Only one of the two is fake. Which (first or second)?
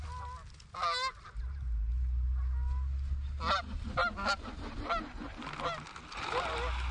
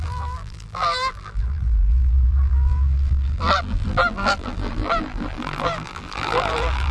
second